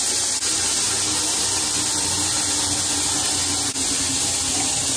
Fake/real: real